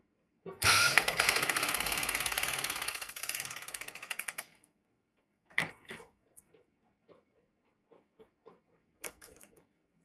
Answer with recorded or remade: remade